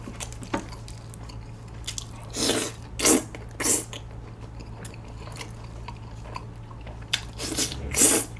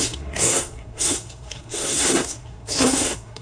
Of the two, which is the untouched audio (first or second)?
first